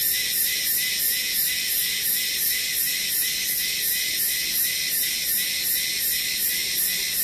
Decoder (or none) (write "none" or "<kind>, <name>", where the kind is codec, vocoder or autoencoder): none